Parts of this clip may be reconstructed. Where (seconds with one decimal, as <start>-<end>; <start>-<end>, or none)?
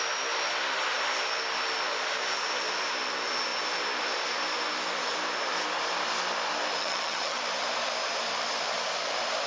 6.8-7.4